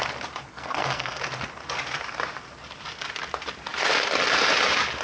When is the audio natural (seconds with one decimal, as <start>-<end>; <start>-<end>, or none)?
0.0-0.5; 1.2-5.0

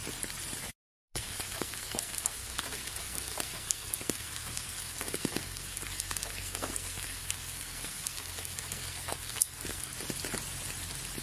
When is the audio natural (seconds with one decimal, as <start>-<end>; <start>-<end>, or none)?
0.0-0.6; 9.9-11.2

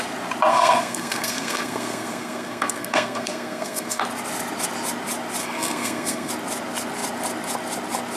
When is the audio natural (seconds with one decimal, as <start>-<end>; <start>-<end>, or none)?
0.0-0.5; 4.0-5.4; 6.3-8.2

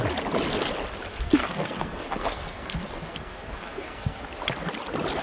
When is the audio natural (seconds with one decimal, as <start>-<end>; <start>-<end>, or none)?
0.0-1.1; 4.2-5.2